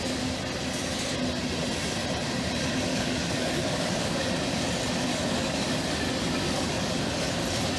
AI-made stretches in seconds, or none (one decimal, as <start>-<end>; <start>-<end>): 2.9-4.3; 5.1-5.9; 6.4-7.0